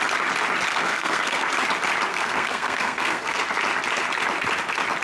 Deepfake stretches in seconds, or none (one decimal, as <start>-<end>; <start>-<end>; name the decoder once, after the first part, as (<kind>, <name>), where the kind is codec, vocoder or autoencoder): 0.7-1.5 (codec, SNAC); 2.1-3.4